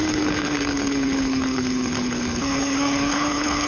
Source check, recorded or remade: remade